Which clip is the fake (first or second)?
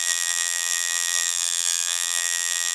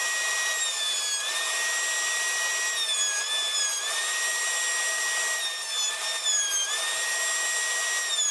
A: first